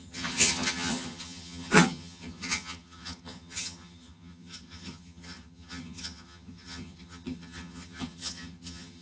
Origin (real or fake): fake